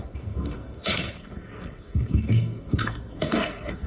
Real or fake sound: fake